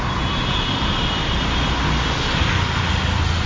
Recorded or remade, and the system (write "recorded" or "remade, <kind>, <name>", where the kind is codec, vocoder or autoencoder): recorded